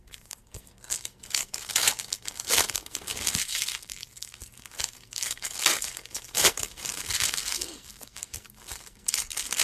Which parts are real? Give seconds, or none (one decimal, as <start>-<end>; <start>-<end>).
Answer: none